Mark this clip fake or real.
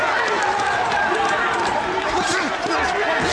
real